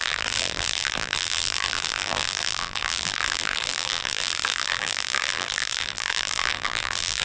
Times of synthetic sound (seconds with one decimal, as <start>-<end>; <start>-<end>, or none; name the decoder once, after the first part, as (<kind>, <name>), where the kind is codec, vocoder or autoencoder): 0.0-7.2 (vocoder, BigVGAN v2)

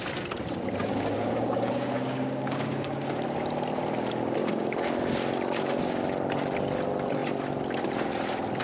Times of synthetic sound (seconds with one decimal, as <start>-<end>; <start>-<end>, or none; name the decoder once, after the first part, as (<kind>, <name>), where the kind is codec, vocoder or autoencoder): 0.8-3.2 (codec, DAC); 4.4-4.9